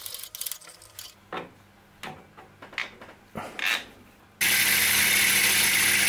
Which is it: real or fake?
real